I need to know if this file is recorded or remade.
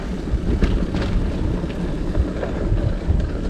recorded